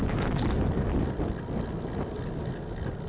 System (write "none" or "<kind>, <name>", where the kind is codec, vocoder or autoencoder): none